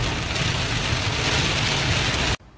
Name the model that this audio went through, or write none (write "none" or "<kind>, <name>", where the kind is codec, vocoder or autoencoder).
none